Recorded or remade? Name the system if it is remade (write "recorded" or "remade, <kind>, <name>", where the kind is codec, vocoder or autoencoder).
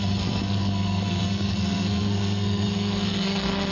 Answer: remade, codec, SNAC